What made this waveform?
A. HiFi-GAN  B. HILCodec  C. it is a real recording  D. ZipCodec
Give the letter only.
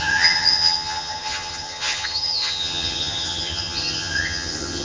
A